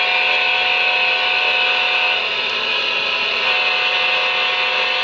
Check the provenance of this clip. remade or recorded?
recorded